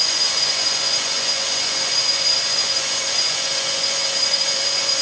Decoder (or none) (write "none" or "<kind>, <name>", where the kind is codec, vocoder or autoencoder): vocoder, Vocos